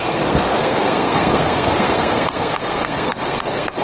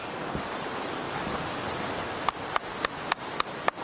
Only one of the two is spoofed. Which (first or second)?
first